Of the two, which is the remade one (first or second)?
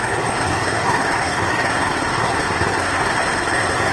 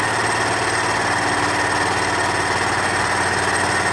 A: first